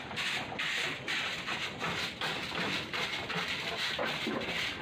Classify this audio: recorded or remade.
recorded